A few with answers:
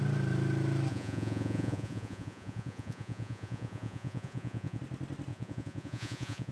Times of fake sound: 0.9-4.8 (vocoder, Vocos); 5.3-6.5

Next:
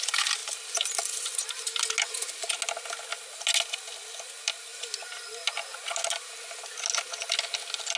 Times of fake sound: none

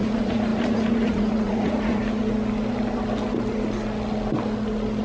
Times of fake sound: 0.0-2.0 (vocoder, Vocos)

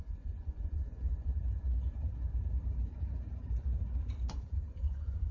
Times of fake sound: 0.0-1.3 (vocoder, Vocos); 4.3-5.3

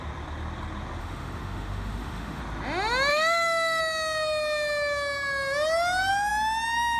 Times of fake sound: 1.0-2.4 (autoencoder, DAC-VAE); 3.1-3.8

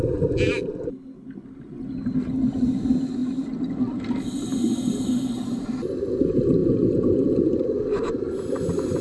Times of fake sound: none

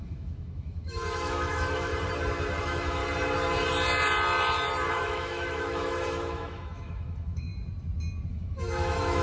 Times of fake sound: 0.0-1.9 (autoencoder, DAC-VAE); 2.6-3.0; 4.9-7.5; 8.3-9.2

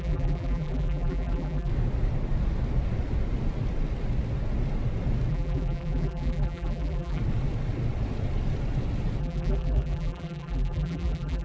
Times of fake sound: 0.0-1.7 (vocoder, BigVGAN v2); 5.3-7.2; 9.2-11.4